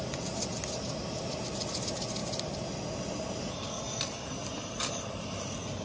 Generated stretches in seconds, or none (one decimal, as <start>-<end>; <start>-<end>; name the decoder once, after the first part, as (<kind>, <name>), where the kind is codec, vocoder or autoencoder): none